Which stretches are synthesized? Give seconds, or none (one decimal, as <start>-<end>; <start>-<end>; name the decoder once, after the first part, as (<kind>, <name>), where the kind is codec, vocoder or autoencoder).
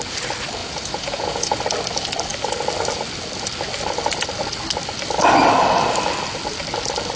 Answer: 0.6-1.6 (vocoder, Vocos)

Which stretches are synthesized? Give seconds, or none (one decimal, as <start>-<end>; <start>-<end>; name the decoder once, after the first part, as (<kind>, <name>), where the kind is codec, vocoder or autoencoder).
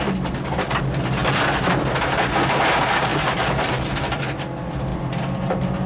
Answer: 3.1-4.0 (vocoder, BigVGAN v2); 4.9-5.9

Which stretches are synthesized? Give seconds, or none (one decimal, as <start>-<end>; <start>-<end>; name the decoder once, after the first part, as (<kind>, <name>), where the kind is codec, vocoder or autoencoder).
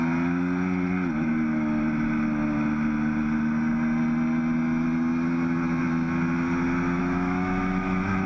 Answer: 7.0-8.3 (autoencoder, DAC-VAE)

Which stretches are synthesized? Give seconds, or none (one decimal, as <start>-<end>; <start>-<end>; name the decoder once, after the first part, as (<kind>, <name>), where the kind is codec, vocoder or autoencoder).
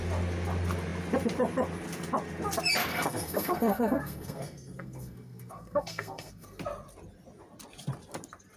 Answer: 2.9-6.6 (codec, SNAC)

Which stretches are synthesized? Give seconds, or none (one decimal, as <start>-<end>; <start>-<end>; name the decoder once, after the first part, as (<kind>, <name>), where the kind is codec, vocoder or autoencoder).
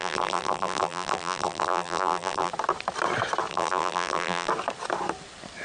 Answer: 0.0-2.5 (vocoder, BigVGAN v2); 3.5-4.5